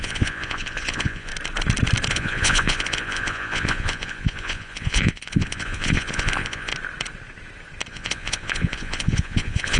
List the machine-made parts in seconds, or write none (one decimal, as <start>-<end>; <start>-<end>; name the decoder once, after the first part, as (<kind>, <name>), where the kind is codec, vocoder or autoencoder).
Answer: 0.0-1.3 (vocoder, Vocos); 2.1-6.7; 7.9-9.8